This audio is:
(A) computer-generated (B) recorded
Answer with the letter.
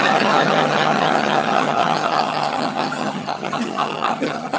A